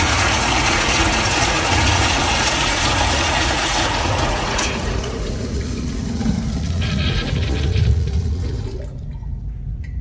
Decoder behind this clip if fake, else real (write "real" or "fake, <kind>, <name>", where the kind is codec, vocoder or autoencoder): fake, vocoder, Vocos